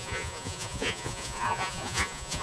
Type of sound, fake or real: fake